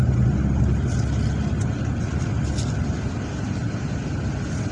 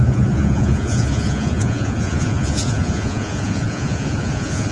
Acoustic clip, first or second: first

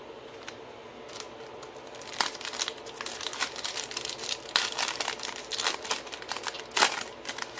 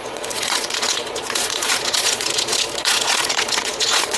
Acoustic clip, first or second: first